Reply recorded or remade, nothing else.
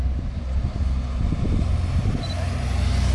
recorded